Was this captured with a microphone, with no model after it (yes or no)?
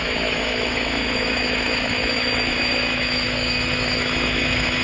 no